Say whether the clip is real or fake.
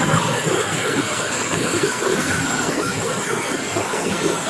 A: fake